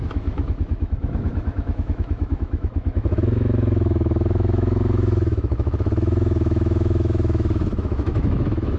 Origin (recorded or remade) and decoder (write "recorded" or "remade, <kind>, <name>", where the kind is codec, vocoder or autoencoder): remade, autoencoder, DAC-VAE